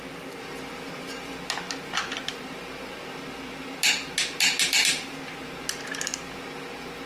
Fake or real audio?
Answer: real